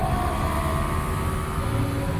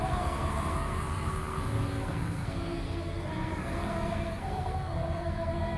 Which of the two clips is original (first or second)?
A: first